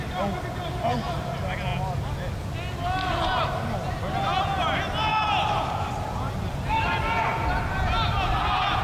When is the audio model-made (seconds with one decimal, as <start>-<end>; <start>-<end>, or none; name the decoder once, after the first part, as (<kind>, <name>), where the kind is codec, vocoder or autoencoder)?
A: 5.1-6.3 (vocoder, BigVGAN v2)